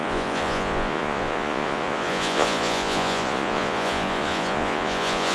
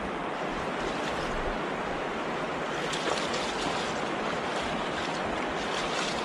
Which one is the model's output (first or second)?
first